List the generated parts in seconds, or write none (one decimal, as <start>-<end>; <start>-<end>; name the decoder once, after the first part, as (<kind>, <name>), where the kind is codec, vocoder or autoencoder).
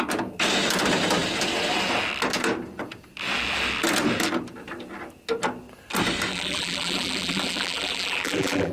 6.3-8.7 (vocoder, BigVGAN v2)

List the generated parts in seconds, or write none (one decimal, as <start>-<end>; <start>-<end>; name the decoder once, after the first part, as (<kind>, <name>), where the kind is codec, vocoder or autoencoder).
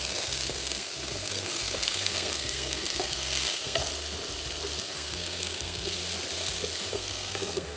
0.0-3.8 (codec, SNAC); 4.8-6.0; 6.9-7.8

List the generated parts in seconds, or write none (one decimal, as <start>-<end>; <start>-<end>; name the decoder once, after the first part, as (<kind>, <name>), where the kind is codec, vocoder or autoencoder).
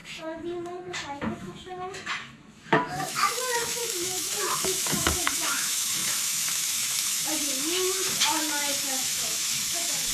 0.0-10.1 (autoencoder, DAC-VAE)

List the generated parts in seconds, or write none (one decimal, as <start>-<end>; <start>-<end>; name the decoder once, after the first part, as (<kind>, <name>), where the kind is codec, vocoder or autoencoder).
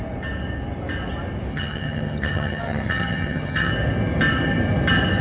1.5-3.7 (vocoder, HiFi-GAN)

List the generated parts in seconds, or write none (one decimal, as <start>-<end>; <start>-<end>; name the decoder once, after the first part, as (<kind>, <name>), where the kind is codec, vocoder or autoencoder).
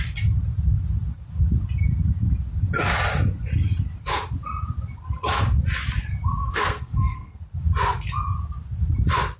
6.4-7.4 (codec, SNAC)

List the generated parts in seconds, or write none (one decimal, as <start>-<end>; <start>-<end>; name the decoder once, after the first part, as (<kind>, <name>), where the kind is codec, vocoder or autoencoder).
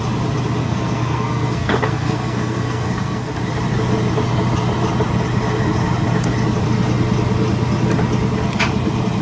0.6-3.3 (codec, SNAC)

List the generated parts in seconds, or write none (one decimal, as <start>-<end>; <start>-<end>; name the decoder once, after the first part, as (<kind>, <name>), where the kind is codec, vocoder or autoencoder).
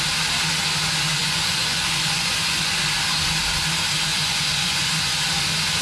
1.2-2.7 (vocoder, Vocos); 4.1-5.2